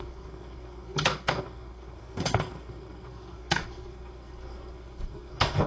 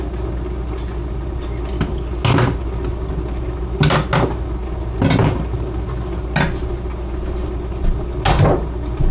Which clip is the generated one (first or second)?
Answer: first